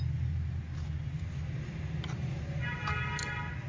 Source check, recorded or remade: recorded